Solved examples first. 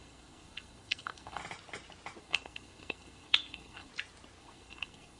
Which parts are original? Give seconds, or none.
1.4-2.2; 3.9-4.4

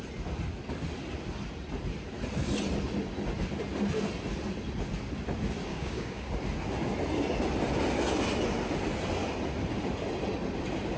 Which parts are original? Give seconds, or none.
0.0-5.7; 6.3-11.0